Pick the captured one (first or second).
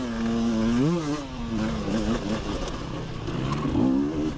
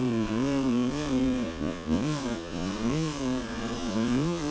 first